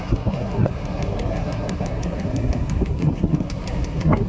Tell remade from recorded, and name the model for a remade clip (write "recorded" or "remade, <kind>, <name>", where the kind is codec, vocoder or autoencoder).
remade, codec, SNAC